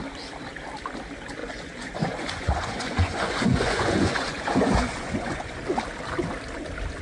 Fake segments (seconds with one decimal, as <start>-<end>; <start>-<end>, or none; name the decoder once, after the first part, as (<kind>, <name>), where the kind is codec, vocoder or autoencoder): 1.4-5.6 (vocoder, Vocos)